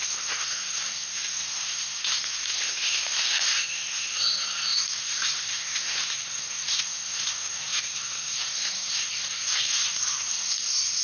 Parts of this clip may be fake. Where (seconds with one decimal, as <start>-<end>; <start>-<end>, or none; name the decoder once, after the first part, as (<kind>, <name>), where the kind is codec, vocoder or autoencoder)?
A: 0.0-11.0 (codec, SNAC)